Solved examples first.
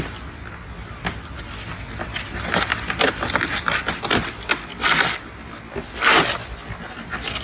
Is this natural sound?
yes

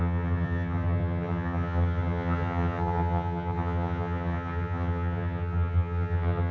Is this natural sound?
no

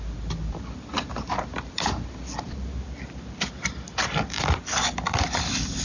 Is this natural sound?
yes